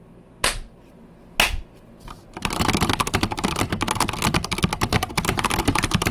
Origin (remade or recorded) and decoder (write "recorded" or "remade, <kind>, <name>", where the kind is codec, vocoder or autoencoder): recorded